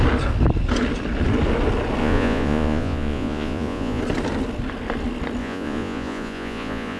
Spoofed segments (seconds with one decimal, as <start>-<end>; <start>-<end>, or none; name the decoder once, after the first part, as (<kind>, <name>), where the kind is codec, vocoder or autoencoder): 2.0-4.0 (vocoder, Vocos); 5.4-7.0